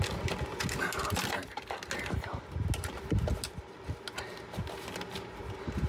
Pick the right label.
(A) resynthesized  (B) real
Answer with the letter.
B